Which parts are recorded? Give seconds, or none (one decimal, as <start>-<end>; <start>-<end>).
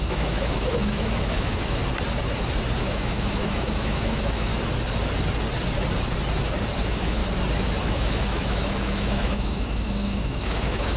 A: 1.8-2.8; 4.5-6.8; 7.2-7.8